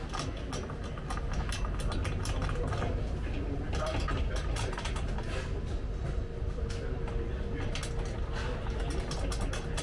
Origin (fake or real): real